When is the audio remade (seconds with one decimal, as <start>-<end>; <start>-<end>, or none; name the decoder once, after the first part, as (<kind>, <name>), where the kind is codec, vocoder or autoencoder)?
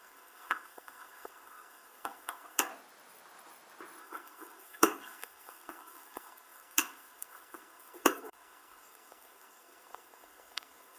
0.0-2.7 (codec, SNAC); 4.0-11.0